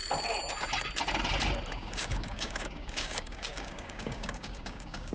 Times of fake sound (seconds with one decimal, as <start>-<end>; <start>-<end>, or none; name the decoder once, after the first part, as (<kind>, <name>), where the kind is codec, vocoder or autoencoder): 1.7-5.1 (codec, DAC)

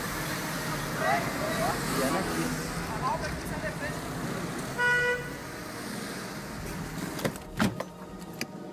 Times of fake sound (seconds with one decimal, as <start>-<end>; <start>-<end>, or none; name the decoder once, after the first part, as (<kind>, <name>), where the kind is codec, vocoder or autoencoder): none